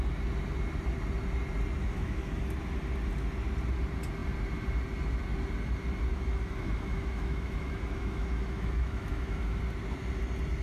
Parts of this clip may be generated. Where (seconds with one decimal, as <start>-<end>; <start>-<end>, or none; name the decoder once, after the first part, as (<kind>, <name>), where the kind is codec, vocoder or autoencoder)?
1.8-2.4 (autoencoder, DAC-VAE); 6.1-9.6